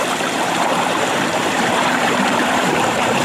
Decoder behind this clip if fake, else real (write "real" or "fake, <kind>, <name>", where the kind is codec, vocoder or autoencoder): fake, vocoder, BigVGAN v2